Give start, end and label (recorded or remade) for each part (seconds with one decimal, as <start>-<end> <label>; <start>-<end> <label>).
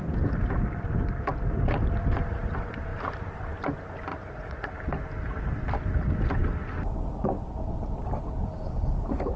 0.0-4.1 recorded; 4.1-4.7 remade; 4.7-9.4 recorded